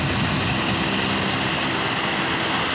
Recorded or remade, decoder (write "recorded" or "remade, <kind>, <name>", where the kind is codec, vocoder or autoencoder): recorded